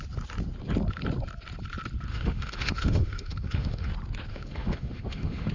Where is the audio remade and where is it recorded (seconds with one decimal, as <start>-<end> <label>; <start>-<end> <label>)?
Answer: 0.0-2.1 recorded; 2.1-3.9 remade; 3.9-4.3 recorded; 4.3-5.5 remade